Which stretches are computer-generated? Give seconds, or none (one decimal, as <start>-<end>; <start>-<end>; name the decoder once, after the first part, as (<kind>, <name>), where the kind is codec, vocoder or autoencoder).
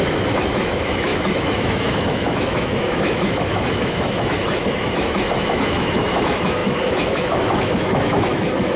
0.0-8.8 (autoencoder, DAC-VAE)